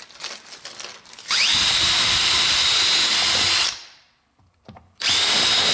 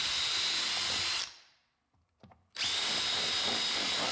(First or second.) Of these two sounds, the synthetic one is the first